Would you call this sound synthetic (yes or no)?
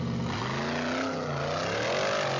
no